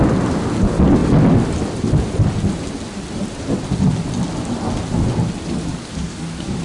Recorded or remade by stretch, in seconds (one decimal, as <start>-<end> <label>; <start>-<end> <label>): 0.0-5.7 recorded; 5.7-6.6 remade